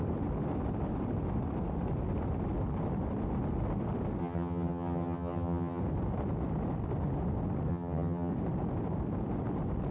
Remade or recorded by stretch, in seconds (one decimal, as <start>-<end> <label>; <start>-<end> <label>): 0.0-4.2 recorded; 4.2-5.8 remade; 5.8-7.7 recorded; 7.7-8.3 remade; 8.3-9.9 recorded